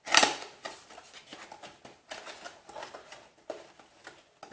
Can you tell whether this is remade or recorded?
recorded